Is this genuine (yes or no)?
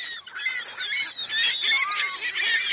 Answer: yes